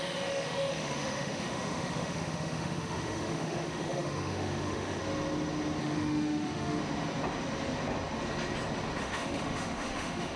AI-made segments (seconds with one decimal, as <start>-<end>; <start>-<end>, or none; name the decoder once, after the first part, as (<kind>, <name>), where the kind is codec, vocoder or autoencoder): 0.0-5.0 (autoencoder, DAC-VAE); 5.8-6.8; 9.0-10.4